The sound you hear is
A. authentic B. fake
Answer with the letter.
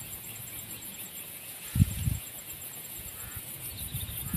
B